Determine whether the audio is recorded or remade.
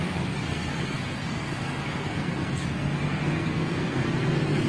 remade